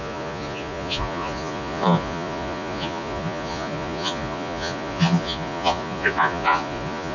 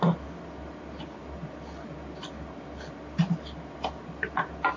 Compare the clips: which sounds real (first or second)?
second